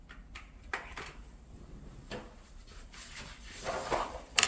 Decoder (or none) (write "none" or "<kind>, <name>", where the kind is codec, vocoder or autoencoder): vocoder, BigVGAN v2